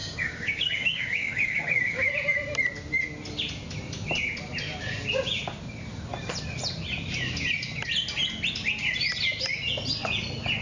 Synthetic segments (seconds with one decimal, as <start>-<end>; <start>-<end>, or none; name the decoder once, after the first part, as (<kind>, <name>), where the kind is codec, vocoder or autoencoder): 0.0-2.1 (codec, DAC)